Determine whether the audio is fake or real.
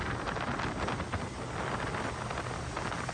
real